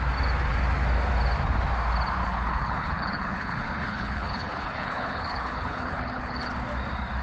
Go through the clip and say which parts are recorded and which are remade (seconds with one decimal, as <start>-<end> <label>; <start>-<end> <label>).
0.0-2.2 recorded; 2.2-6.5 remade; 6.5-7.2 recorded